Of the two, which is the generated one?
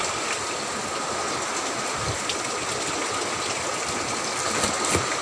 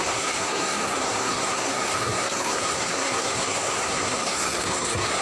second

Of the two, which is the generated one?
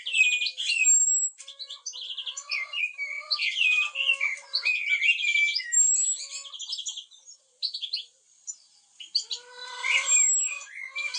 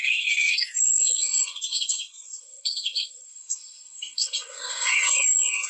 second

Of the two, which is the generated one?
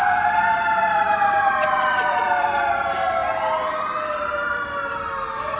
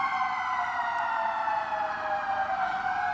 first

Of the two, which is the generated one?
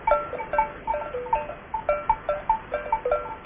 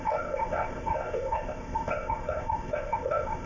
second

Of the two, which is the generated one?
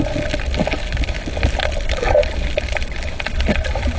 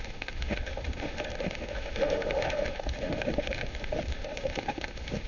second